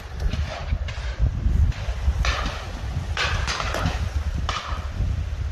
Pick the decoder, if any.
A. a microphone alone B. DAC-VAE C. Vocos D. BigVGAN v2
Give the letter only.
A